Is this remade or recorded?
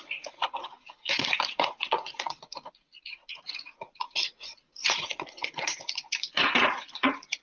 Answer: remade